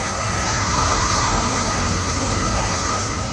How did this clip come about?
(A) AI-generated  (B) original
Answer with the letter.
A